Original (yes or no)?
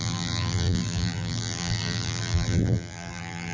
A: no